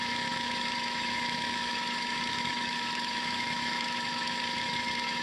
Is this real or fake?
fake